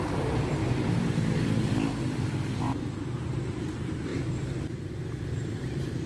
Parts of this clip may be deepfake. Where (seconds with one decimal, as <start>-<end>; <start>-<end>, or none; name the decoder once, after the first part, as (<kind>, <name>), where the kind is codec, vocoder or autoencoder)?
0.0-6.1 (vocoder, BigVGAN v2)